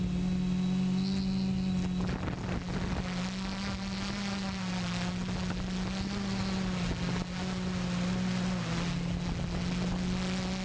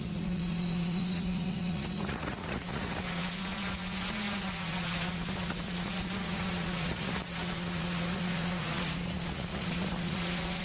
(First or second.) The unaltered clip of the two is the first